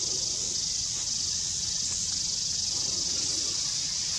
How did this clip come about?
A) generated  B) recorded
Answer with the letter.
B